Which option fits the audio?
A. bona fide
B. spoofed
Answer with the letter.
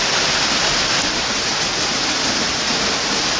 A